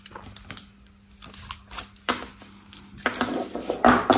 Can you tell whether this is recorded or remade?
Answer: recorded